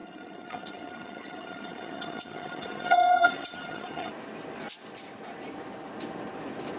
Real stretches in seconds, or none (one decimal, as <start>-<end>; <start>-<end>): 4.1-6.8

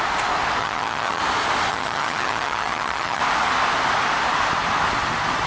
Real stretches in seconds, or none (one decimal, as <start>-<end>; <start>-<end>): 0.0-0.6; 1.2-1.7; 3.2-5.5

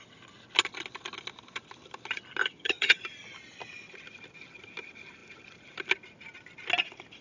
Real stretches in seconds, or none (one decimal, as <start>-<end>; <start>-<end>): 0.0-2.4; 3.0-7.2